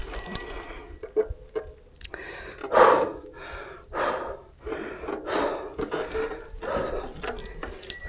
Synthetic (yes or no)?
no